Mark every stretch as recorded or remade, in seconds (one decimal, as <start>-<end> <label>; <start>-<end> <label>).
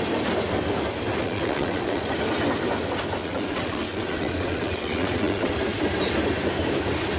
0.0-1.1 recorded; 1.1-2.0 remade; 2.0-3.2 recorded; 3.2-5.5 remade; 5.5-7.2 recorded